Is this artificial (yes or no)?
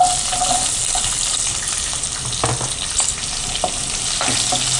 no